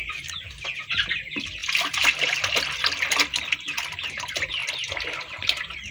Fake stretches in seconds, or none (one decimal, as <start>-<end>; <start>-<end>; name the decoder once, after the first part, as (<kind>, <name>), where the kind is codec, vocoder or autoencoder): 0.0-4.6 (vocoder, BigVGAN v2); 5.4-5.9